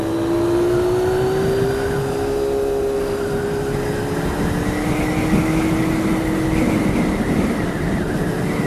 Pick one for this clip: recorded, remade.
recorded